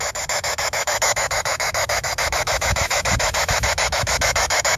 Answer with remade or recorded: remade